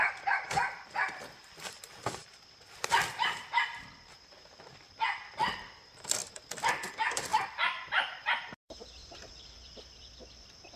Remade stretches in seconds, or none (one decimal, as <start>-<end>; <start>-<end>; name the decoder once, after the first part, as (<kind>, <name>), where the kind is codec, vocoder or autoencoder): 0.0-6.2 (vocoder, BigVGAN v2); 6.7-7.3; 8.4-10.8

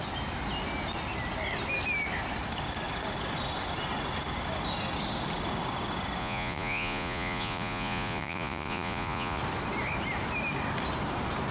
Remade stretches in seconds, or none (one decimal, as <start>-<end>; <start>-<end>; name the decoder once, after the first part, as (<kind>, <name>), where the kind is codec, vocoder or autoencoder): 6.2-9.4 (vocoder, Vocos)

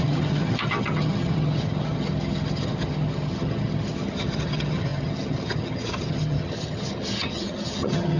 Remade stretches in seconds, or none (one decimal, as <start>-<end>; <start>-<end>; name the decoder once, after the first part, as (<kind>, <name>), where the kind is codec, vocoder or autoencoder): 0.0-8.2 (vocoder, HiFi-GAN)

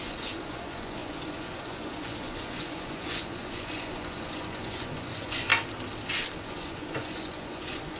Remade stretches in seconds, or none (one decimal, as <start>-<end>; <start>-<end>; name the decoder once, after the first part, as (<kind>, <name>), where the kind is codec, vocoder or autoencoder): 0.0-5.5 (vocoder, Vocos); 6.4-8.0

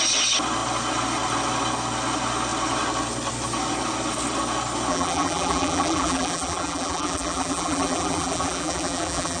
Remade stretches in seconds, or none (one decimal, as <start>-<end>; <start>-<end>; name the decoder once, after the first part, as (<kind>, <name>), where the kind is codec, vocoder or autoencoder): 4.9-9.4 (vocoder, BigVGAN v2)

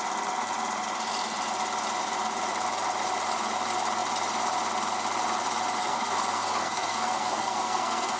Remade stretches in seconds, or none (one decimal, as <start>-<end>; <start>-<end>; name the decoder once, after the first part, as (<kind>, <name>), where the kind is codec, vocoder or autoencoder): 5.8-8.2 (codec, SNAC)